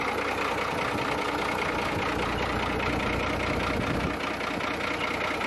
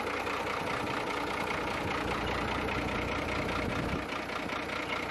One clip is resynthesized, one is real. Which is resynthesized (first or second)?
second